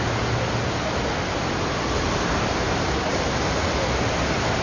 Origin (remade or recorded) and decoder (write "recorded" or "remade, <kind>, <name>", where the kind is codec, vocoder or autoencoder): recorded